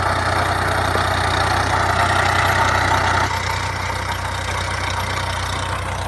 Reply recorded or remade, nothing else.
recorded